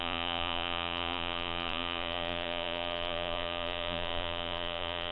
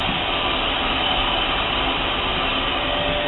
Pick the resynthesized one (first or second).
first